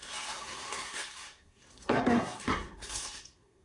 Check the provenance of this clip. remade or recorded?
remade